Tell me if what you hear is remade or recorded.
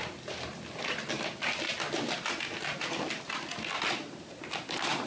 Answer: recorded